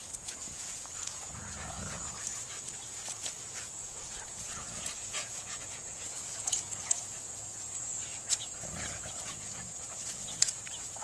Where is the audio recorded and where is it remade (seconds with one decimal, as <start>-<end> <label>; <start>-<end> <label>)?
0.0-2.3 remade; 2.3-3.5 recorded; 3.5-11.0 remade